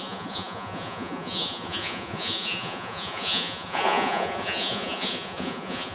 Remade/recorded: remade